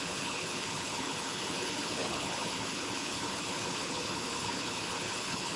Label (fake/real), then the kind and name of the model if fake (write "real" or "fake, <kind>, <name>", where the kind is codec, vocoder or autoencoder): fake, codec, HILCodec